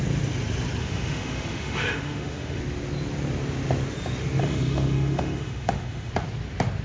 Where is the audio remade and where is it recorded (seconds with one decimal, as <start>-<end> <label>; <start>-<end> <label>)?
0.0-0.8 recorded; 0.8-2.6 remade; 2.6-4.4 recorded; 4.4-6.1 remade; 6.1-6.8 recorded